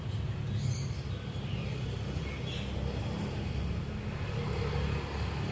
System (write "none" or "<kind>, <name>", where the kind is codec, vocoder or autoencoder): none